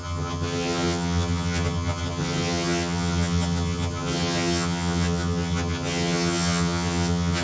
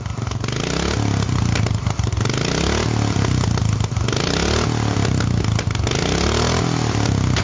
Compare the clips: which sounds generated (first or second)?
first